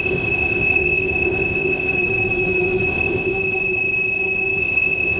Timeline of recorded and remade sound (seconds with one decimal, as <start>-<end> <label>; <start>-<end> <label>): 0.0-1.9 remade; 1.9-2.9 recorded; 2.9-3.3 remade; 3.3-4.6 recorded; 4.6-5.2 remade